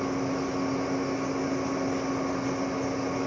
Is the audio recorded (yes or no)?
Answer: yes